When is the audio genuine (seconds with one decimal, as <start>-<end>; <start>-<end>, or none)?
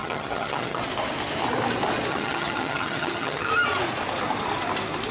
0.8-2.1; 3.5-5.1